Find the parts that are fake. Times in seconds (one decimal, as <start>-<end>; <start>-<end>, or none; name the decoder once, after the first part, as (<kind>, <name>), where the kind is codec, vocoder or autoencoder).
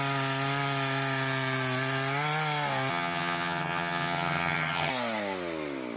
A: 2.9-4.9 (vocoder, HiFi-GAN)